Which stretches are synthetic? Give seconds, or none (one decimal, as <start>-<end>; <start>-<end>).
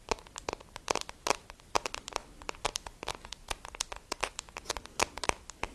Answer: none